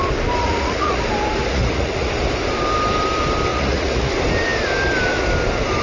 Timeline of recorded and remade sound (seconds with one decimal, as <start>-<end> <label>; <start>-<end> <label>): 0.0-0.4 recorded; 0.4-1.0 remade; 1.0-1.5 recorded; 1.5-2.1 remade; 2.1-3.5 recorded; 3.5-4.1 remade; 4.1-5.8 recorded